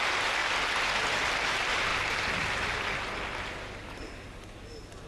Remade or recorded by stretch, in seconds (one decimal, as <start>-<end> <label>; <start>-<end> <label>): 0.0-5.1 recorded